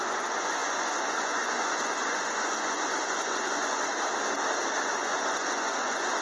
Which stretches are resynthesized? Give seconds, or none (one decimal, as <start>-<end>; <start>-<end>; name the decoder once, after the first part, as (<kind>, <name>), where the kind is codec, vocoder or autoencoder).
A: 0.0-3.9 (vocoder, Vocos); 4.9-6.2